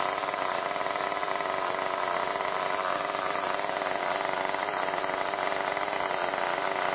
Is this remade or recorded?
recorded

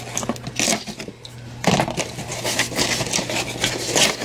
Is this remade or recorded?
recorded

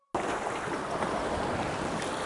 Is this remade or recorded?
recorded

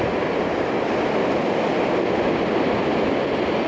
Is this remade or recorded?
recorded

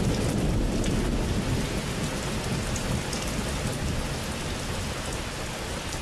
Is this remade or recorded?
recorded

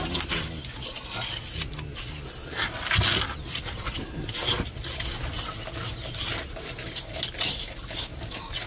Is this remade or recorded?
recorded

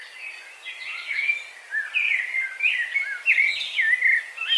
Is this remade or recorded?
recorded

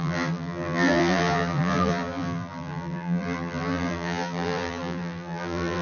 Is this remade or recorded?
remade